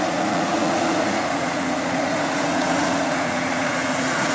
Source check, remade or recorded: remade